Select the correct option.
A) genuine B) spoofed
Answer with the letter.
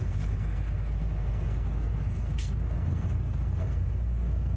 B